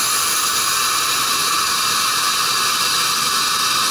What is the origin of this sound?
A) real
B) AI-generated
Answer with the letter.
A